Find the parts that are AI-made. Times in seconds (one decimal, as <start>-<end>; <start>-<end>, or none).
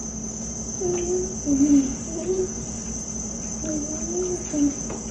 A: 1.9-3.7